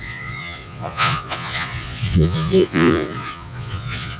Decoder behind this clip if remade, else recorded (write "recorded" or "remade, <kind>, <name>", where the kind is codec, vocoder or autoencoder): remade, vocoder, Vocos